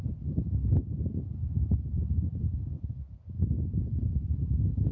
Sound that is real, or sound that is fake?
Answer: real